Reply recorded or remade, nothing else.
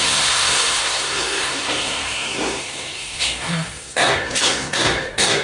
remade